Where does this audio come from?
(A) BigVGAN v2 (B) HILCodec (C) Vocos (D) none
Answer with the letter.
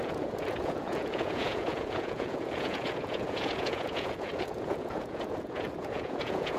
C